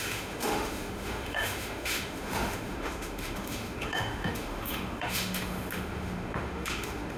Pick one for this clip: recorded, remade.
remade